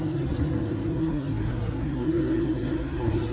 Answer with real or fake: fake